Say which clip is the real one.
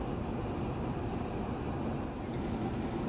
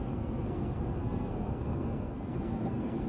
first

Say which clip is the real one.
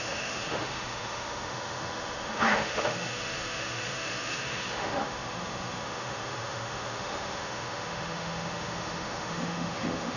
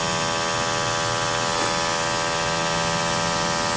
second